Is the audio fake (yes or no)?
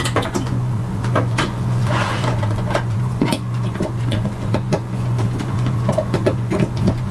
yes